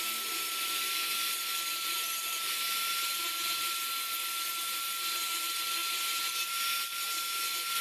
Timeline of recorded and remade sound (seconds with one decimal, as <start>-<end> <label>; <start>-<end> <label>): 0.0-7.8 recorded